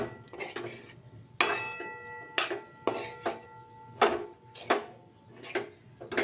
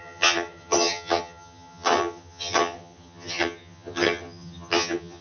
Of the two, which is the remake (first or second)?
second